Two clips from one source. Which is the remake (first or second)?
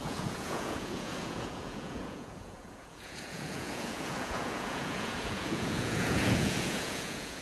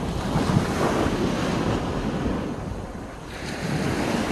first